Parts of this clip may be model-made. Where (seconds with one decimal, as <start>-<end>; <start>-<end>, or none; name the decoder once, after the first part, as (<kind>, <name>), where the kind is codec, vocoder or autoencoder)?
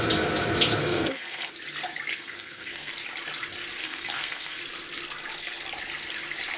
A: 0.8-1.5 (codec, SNAC); 2.1-2.9; 3.8-4.6